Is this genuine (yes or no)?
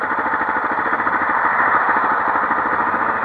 yes